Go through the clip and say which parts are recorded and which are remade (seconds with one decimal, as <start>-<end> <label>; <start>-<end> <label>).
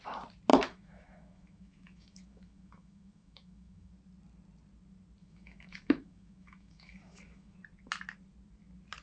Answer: 0.0-0.5 recorded; 0.5-3.9 remade; 3.9-5.2 recorded; 5.2-7.6 remade; 7.6-9.0 recorded